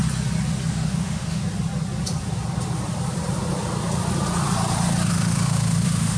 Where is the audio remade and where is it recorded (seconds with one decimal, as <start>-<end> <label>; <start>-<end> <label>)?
0.0-0.7 recorded; 0.7-1.4 remade; 1.4-5.1 recorded; 5.1-6.2 remade